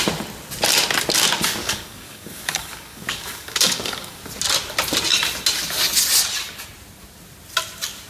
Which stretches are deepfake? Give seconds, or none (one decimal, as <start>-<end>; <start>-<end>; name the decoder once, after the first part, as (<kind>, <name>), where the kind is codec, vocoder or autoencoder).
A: 1.6-4.2 (codec, DAC)